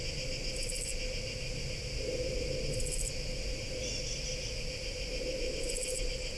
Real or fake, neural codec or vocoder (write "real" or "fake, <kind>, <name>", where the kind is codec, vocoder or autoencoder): real